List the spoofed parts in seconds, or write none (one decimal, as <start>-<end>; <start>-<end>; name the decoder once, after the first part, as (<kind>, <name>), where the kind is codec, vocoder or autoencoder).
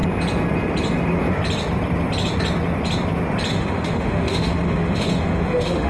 3.5-5.9 (autoencoder, DAC-VAE)